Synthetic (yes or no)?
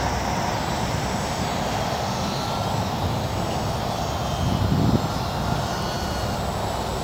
no